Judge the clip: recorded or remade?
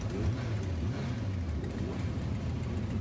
recorded